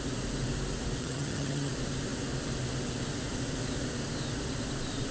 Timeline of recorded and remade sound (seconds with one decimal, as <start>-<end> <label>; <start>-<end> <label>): 0.0-1.0 recorded; 1.0-1.7 remade; 1.7-5.1 recorded

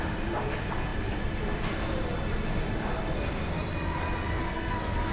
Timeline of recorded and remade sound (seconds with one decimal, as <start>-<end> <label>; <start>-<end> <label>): 0.0-4.4 recorded; 4.4-5.1 remade

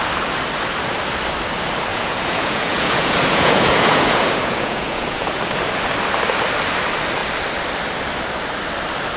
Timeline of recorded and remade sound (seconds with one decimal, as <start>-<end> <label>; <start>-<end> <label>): 0.0-1.9 recorded; 1.9-5.4 remade; 5.4-9.2 recorded

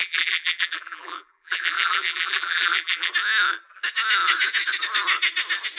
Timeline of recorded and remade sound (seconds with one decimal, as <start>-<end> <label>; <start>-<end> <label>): 0.0-3.1 remade; 3.1-5.8 recorded

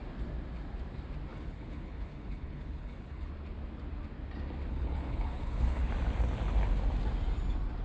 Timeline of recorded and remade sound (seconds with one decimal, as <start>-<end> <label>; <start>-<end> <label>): 0.0-1.3 recorded; 1.3-3.3 remade; 3.3-4.7 recorded; 4.7-5.8 remade; 5.8-7.8 recorded

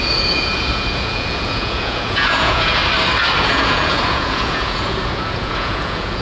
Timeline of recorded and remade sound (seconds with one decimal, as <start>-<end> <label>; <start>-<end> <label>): 0.0-2.8 remade; 2.8-3.4 recorded; 3.4-6.2 remade

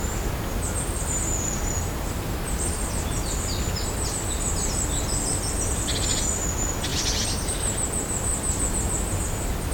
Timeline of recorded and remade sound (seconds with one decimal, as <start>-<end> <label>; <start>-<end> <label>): 0.0-9.7 recorded

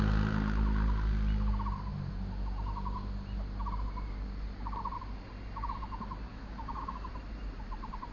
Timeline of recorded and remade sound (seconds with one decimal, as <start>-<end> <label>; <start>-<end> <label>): 0.0-6.3 recorded; 6.3-7.1 remade; 7.1-8.1 recorded